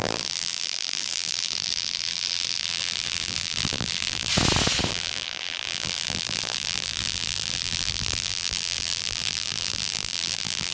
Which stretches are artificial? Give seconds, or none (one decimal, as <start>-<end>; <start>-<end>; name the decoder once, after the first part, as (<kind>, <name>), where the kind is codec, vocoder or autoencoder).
0.0-4.3 (vocoder, BigVGAN v2); 4.9-10.7